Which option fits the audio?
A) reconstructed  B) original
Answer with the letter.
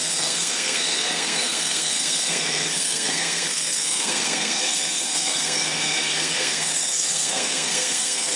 A